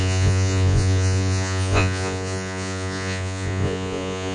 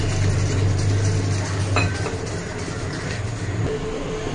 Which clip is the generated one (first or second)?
first